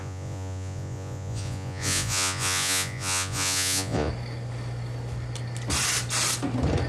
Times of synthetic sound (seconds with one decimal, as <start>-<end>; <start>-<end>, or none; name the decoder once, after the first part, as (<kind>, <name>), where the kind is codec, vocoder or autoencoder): 0.0-4.1 (vocoder, Vocos)